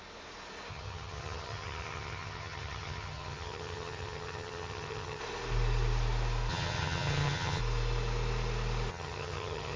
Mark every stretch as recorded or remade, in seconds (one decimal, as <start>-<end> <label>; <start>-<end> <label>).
0.0-0.7 recorded; 0.7-5.2 remade; 5.2-6.5 recorded; 6.5-7.6 remade; 7.6-8.9 recorded; 8.9-9.8 remade